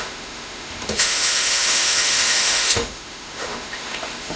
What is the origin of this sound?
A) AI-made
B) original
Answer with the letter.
A